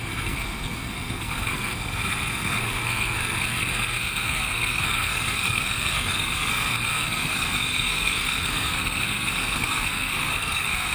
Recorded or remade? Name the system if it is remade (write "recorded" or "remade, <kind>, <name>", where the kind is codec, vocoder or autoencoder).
remade, codec, SNAC